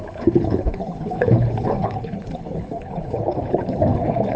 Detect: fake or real fake